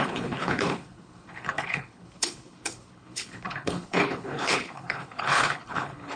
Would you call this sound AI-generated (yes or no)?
yes